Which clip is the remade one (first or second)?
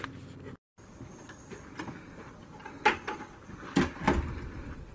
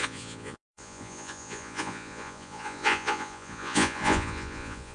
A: second